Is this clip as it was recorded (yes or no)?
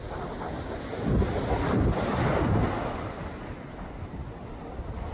yes